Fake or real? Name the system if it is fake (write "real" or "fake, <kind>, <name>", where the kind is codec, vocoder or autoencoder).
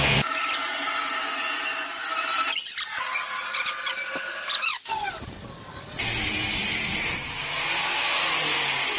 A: real